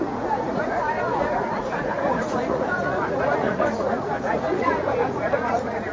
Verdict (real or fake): fake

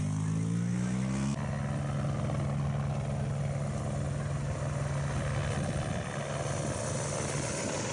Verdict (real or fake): real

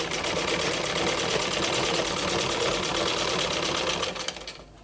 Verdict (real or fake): real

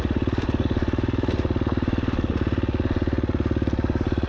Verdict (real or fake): real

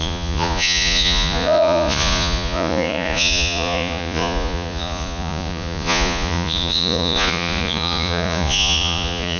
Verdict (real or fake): fake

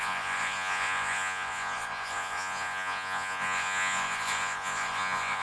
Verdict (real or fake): fake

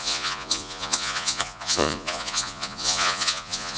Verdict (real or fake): fake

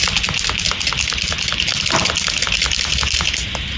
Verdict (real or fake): real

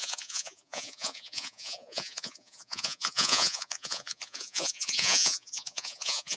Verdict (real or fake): fake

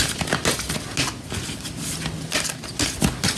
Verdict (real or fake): real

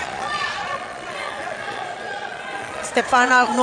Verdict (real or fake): fake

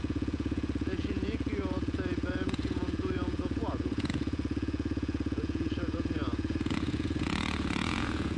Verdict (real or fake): fake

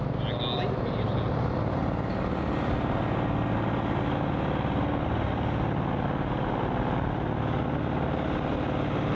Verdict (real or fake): real